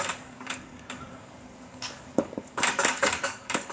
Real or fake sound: fake